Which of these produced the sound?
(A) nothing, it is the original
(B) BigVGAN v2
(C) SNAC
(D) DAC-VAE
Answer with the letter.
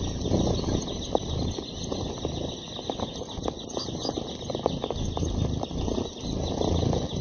A